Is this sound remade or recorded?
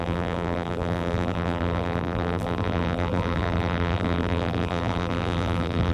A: remade